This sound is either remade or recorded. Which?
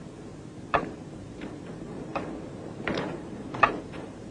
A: remade